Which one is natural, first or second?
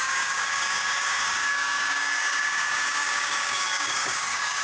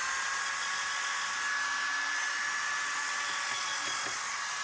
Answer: second